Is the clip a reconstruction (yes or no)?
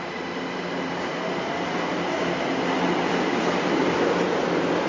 no